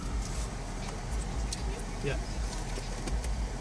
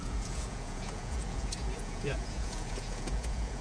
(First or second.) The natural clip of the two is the first